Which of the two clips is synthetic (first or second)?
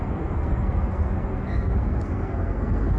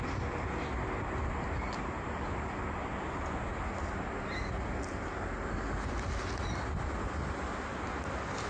first